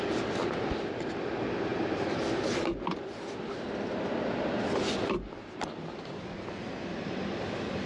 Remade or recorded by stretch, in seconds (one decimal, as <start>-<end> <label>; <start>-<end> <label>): 0.0-7.9 recorded